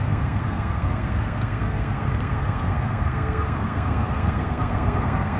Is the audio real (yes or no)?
no